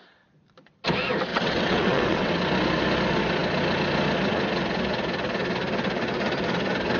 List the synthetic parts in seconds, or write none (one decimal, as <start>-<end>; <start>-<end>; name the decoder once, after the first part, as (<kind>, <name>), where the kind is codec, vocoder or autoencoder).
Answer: 1.3-2.3 (vocoder, WaveNeXt)

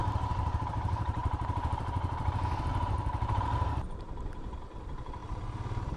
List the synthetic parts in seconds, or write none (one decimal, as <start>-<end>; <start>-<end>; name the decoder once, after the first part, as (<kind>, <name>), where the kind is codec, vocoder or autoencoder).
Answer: 0.0-5.2 (vocoder, BigVGAN v2)

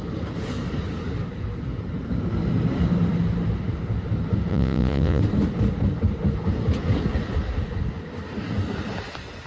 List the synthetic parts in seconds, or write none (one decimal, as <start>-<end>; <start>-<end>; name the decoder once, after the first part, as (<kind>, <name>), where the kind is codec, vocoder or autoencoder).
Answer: 4.5-5.2 (vocoder, Vocos)

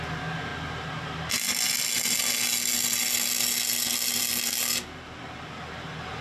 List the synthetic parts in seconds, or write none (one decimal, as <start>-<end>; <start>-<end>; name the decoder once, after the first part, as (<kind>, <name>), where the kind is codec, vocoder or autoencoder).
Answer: none

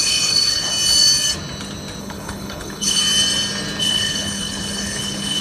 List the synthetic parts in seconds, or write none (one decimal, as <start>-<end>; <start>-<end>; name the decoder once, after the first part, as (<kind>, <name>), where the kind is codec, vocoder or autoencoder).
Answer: 0.0-0.7 (codec, HILCodec); 2.0-3.0; 3.8-5.4

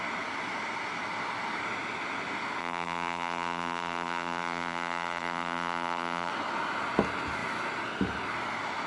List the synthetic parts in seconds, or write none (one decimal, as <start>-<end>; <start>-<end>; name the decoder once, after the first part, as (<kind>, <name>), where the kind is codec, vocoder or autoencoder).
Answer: 2.6-6.3 (vocoder, BigVGAN v2)

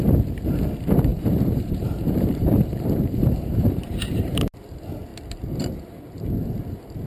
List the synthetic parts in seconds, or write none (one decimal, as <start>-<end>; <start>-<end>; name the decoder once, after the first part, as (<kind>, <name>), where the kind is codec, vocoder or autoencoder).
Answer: 1.1-4.4 (vocoder, BigVGAN v2)

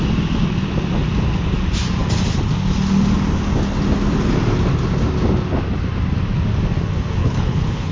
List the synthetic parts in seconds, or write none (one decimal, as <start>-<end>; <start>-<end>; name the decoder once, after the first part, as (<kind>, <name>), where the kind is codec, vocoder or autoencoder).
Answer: 7.2-7.9 (codec, HILCodec)